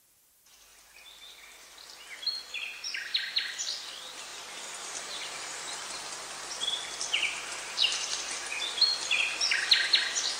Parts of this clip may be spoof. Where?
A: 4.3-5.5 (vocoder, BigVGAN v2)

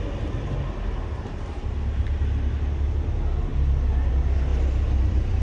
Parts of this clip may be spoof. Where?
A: none

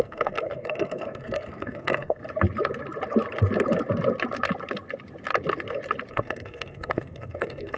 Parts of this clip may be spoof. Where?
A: 0.0-2.2 (codec, SNAC); 6.1-7.8

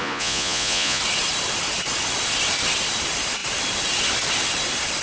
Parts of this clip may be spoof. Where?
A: 0.0-1.0 (vocoder, Vocos)